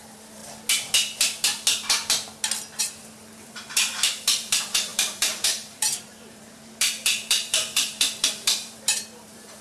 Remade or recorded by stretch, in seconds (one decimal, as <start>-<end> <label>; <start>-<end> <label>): 0.0-0.4 remade; 0.4-2.8 recorded; 2.8-9.6 remade